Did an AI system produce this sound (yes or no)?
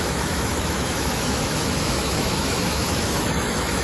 yes